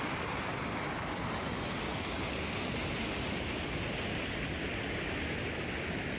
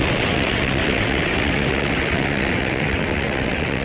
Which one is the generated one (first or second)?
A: second